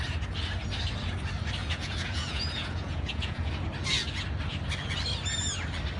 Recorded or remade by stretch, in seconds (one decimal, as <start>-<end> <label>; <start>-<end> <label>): 0.0-1.6 recorded; 1.6-3.5 remade; 3.5-6.0 recorded